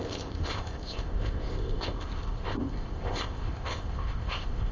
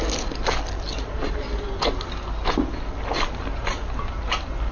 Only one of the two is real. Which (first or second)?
second